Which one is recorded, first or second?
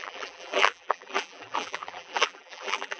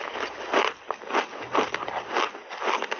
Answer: second